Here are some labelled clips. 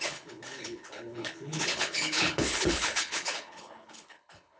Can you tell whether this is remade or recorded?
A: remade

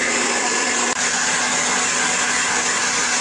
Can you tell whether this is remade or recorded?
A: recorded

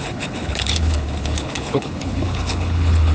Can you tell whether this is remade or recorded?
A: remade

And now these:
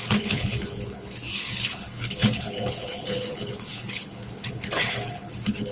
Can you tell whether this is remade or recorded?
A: remade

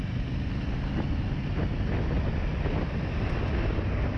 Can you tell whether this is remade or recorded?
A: recorded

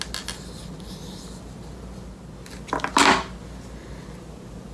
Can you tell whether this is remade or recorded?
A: recorded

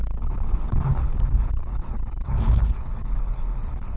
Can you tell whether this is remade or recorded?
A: remade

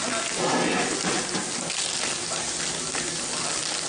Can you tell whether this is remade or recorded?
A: recorded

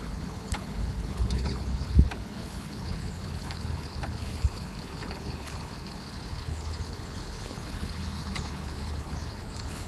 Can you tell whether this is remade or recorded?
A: remade